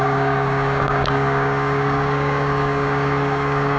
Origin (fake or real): fake